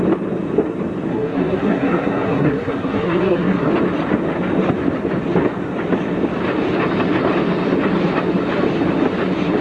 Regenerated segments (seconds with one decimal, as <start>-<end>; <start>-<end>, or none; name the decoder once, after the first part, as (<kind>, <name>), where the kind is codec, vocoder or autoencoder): 1.1-3.7 (codec, SNAC)